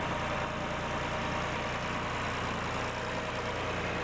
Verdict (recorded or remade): recorded